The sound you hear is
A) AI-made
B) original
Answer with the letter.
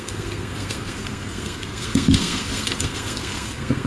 A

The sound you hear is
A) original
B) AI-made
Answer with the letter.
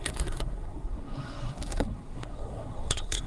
B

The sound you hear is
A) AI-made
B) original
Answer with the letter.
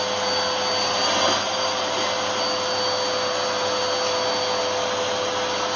B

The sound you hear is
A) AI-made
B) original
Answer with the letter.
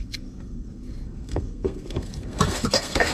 A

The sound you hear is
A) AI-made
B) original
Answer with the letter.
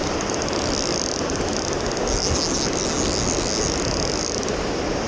B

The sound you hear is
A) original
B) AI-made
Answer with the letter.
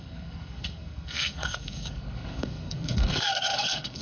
B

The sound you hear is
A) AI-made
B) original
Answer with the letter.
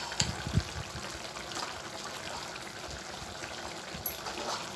B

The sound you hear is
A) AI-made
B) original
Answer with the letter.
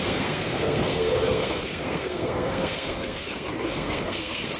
A